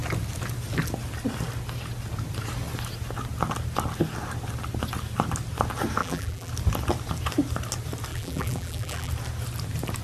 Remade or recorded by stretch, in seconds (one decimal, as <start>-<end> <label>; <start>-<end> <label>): 0.0-6.0 recorded; 6.0-6.5 remade; 6.5-8.1 recorded; 8.1-9.1 remade; 9.1-10.0 recorded